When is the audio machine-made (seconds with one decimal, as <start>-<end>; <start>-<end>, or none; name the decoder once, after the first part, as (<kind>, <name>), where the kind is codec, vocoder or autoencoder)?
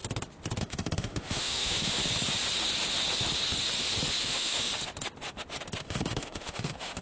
0.6-2.0 (autoencoder, DAC-VAE); 4.2-4.7; 5.8-7.0